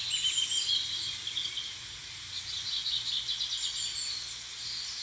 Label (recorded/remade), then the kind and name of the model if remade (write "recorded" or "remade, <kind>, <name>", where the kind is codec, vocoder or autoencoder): recorded